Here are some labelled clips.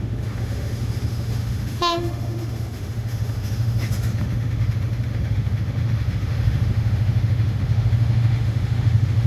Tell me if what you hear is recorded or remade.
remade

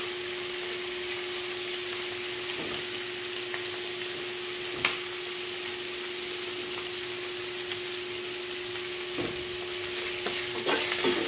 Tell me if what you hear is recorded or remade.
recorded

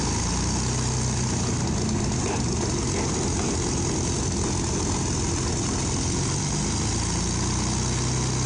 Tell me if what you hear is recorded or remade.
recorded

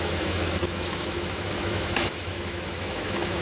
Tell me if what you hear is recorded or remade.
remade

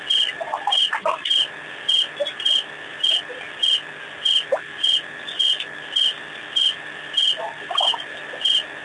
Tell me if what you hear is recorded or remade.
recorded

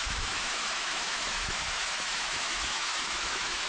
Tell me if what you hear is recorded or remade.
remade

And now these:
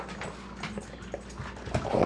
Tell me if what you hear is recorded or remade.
recorded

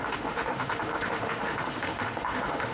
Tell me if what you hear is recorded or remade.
remade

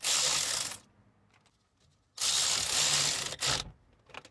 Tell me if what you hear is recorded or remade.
recorded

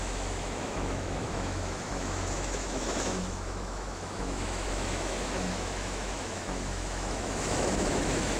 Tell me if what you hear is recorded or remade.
remade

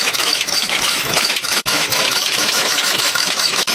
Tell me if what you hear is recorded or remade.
remade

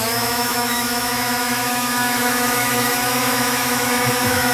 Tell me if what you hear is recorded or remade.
remade